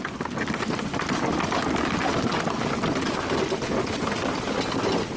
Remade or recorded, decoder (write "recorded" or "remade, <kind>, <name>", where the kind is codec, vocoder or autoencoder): recorded